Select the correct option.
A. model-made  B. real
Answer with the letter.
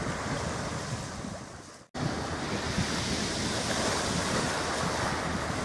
B